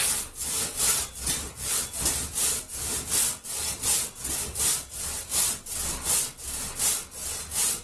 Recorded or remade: recorded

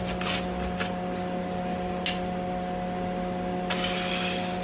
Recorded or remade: recorded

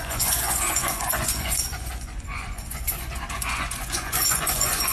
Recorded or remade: remade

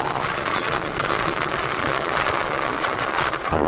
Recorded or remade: remade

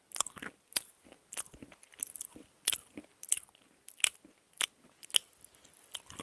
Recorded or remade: recorded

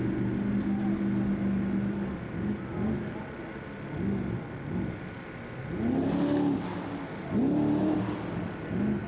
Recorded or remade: recorded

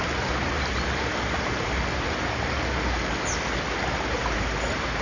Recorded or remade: recorded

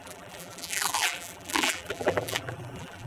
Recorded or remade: remade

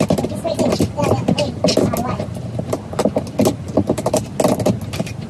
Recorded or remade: recorded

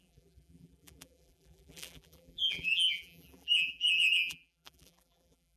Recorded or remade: remade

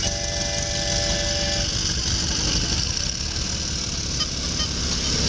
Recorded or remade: recorded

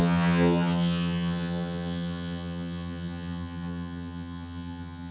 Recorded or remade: remade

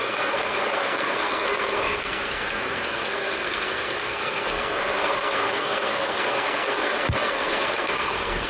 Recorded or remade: remade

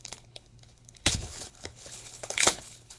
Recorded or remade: remade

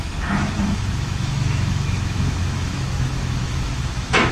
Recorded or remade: remade